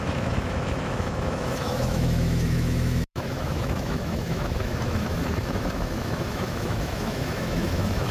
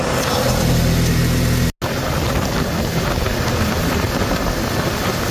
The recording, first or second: second